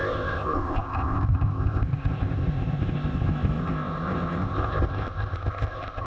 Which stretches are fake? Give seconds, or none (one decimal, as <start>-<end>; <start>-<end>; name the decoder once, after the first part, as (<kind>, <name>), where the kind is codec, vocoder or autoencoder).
0.0-6.1 (codec, ZipCodec)